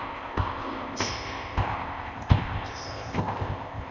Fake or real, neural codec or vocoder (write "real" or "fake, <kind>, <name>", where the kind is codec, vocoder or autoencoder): fake, codec, ZipCodec